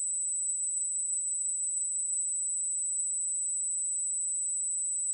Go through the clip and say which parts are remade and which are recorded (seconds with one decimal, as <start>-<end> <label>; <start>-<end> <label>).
0.0-0.5 recorded; 0.5-2.2 remade; 2.2-5.1 recorded